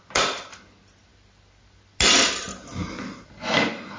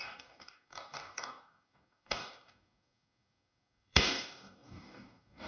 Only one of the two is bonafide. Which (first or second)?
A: first